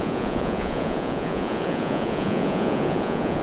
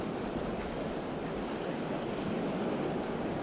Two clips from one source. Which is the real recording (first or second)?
second